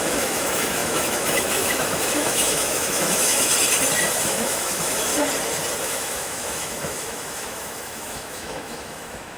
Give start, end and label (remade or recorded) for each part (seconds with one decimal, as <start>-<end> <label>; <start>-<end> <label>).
0.0-3.5 remade; 3.5-4.2 recorded; 4.2-5.1 remade; 5.1-5.8 recorded; 5.8-9.4 remade